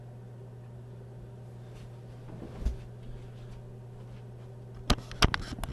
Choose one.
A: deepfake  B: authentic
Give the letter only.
B